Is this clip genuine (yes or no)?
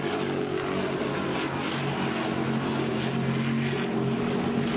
yes